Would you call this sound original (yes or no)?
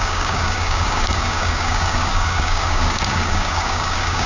no